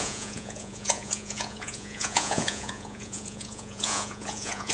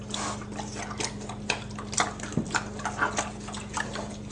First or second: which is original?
second